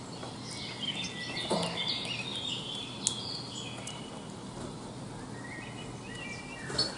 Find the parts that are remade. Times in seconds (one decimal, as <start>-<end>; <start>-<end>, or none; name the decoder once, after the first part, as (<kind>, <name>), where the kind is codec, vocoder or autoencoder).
none